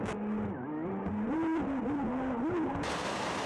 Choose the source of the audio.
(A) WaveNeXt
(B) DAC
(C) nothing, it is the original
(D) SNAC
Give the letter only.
C